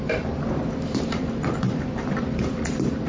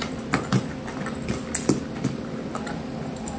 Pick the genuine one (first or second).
second